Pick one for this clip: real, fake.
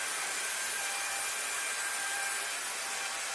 real